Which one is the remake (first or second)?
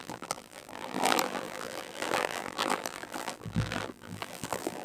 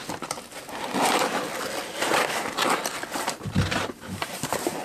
first